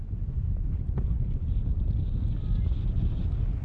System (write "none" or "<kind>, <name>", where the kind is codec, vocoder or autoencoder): none